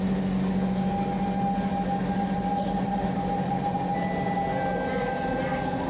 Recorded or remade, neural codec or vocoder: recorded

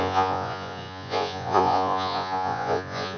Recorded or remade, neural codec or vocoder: remade, vocoder, Vocos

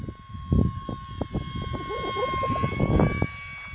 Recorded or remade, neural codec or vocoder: recorded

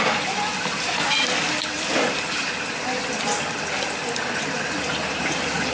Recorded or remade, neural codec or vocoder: recorded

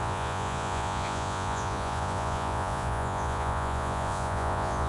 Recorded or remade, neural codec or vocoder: remade, vocoder, Vocos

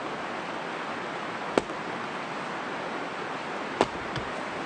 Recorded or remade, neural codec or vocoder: recorded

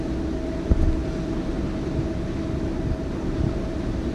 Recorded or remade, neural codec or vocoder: recorded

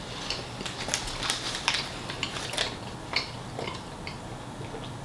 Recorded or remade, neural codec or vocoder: recorded